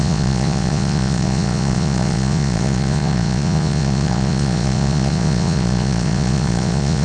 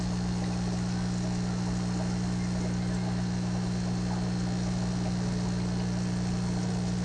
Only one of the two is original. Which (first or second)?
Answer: second